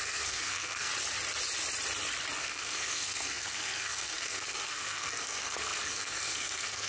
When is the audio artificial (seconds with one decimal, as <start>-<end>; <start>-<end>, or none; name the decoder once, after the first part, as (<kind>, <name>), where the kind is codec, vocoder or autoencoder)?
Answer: 0.0-0.9 (codec, SNAC); 2.4-6.9